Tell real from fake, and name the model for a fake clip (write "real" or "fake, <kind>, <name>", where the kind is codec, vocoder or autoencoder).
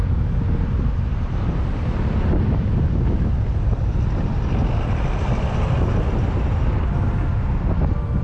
real